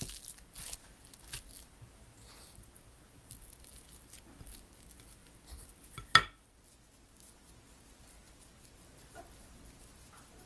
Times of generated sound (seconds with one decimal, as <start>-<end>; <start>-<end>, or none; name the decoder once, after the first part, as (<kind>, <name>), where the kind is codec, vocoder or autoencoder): none